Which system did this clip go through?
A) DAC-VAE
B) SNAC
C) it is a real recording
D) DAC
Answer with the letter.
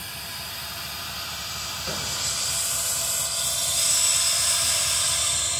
C